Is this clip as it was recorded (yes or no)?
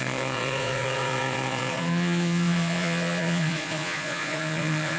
no